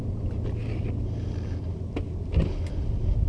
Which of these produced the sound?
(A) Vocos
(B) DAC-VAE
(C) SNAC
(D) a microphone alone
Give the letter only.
D